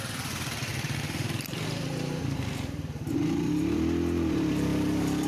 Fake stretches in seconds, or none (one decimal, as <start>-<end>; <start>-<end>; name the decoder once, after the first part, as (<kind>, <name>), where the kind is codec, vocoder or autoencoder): 0.0-5.3 (vocoder, BigVGAN v2)